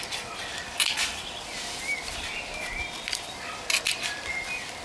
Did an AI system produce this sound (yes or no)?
no